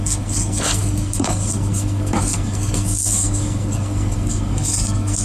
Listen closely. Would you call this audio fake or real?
fake